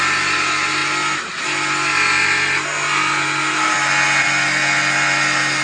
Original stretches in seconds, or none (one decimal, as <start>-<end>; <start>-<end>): 0.0-5.6